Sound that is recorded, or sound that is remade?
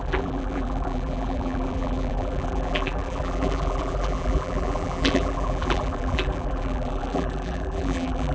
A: remade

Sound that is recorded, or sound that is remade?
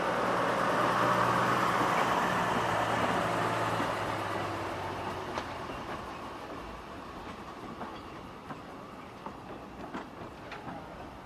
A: remade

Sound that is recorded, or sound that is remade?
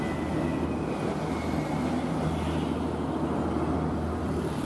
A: recorded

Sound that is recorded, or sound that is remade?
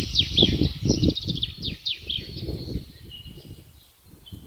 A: recorded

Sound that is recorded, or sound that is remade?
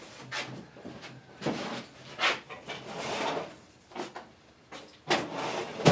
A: recorded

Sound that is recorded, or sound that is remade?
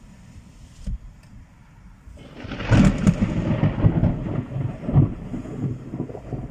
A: recorded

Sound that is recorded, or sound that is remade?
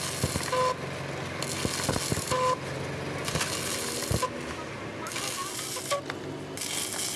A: recorded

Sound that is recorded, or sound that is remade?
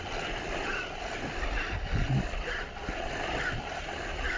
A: recorded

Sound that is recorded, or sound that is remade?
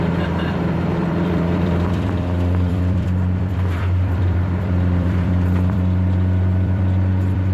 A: remade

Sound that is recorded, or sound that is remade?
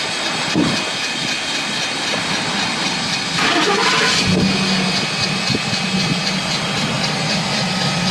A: recorded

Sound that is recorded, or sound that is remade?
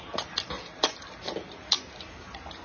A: recorded